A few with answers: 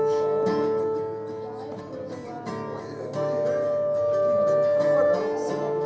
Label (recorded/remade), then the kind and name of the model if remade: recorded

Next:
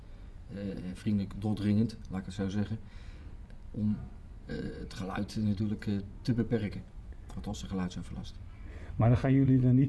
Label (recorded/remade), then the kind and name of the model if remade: remade, vocoder, Vocos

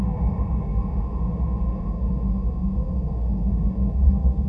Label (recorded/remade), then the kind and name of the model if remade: remade, autoencoder, DAC-VAE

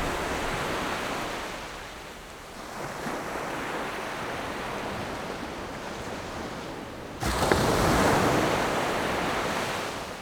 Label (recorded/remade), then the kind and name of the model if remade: recorded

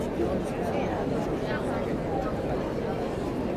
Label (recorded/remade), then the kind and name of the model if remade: recorded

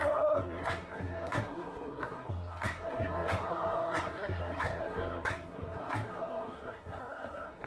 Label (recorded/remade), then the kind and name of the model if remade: remade, codec, SNAC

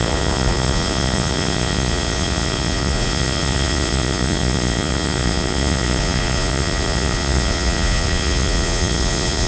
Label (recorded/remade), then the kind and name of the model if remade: remade, vocoder, Vocos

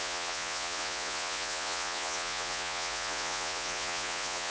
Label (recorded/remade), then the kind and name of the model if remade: remade, vocoder, Vocos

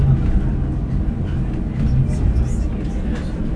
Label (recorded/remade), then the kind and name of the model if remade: recorded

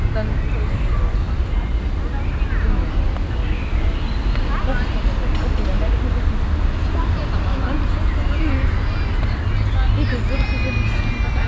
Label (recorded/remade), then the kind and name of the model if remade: recorded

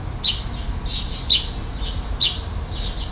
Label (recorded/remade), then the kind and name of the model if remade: recorded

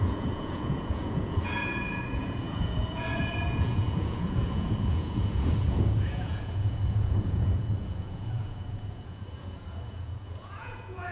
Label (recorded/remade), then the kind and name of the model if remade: remade, vocoder, Vocos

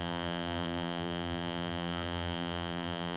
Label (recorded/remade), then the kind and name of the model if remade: remade, vocoder, BigVGAN v2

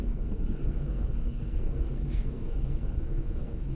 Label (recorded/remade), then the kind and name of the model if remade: remade, codec, SNAC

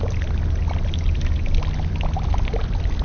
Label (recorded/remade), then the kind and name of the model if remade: recorded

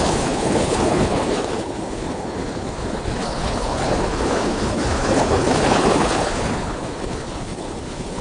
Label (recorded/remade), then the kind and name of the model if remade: remade, codec, HILCodec